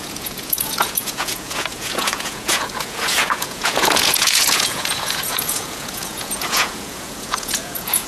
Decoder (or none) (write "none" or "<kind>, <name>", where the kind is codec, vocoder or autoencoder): vocoder, Vocos